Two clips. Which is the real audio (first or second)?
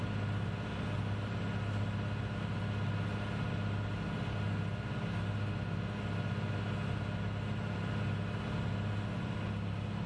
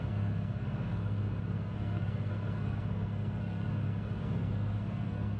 first